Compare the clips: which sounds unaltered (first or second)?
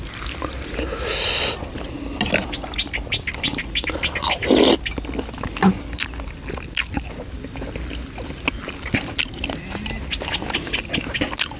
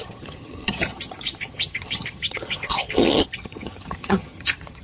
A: first